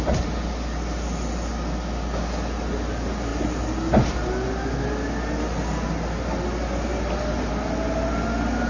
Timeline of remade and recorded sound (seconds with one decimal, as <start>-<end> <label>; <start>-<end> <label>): 0.0-8.7 recorded